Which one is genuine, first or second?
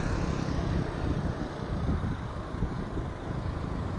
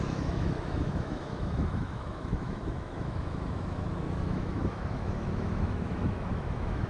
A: first